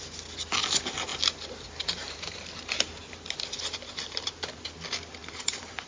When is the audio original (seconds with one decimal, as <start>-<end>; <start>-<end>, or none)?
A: 0.0-1.1; 4.6-5.2

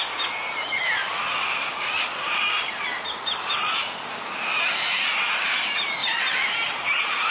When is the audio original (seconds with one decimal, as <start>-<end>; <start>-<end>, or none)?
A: 0.0-1.0; 2.7-6.0

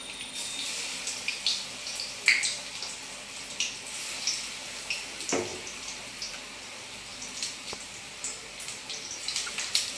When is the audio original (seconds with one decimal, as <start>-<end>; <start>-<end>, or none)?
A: 0.0-5.5; 6.4-7.1; 7.8-10.0